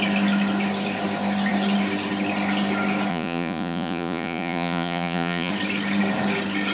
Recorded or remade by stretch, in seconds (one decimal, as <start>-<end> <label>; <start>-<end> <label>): 0.0-3.1 recorded; 3.1-5.5 remade; 5.5-6.7 recorded